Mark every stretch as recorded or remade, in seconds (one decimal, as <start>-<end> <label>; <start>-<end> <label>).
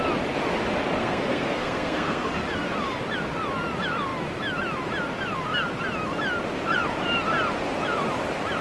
0.0-1.0 recorded; 1.0-2.3 remade; 2.3-8.6 recorded